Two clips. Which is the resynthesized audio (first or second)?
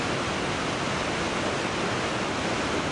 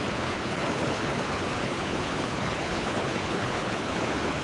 second